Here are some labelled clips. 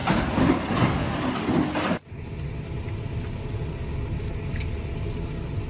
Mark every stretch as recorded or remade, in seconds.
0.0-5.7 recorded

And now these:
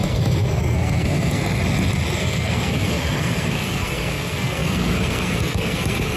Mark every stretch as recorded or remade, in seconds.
0.0-1.4 remade; 1.4-2.1 recorded; 2.1-6.2 remade

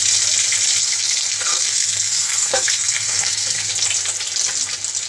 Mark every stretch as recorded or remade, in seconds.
0.0-0.8 recorded; 0.8-3.7 remade; 3.7-5.1 recorded

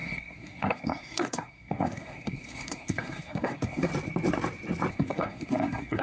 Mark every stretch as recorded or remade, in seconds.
0.0-3.9 remade; 3.9-4.9 recorded; 4.9-6.0 remade

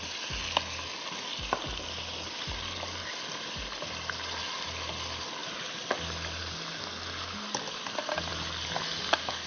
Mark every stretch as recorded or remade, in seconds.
0.0-9.5 recorded

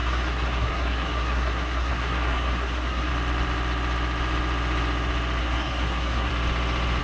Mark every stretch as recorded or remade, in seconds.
0.0-3.1 remade; 3.1-5.4 recorded; 5.4-6.3 remade; 6.3-7.0 recorded

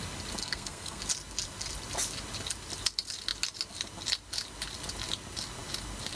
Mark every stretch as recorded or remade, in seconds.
0.0-0.4 recorded; 0.4-1.0 remade; 1.0-6.2 recorded